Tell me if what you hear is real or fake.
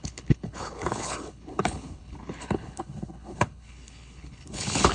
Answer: fake